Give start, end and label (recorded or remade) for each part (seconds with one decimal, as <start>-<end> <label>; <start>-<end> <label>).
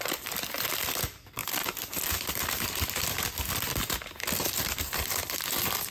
0.0-1.4 remade; 1.4-4.6 recorded; 4.6-5.2 remade; 5.2-5.9 recorded